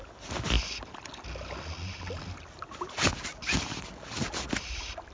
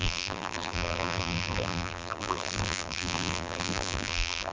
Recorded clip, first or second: first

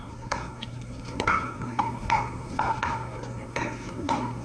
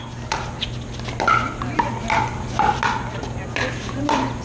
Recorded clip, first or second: second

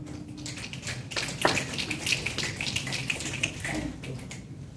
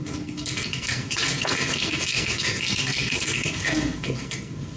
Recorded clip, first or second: first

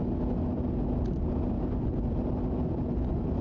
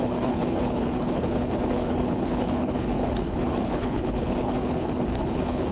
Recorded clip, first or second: first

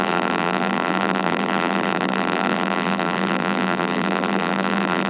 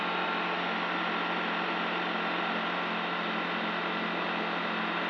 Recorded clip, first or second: second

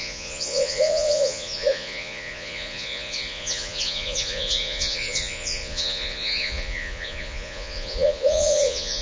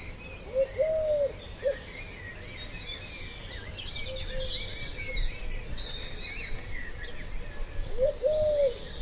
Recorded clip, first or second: second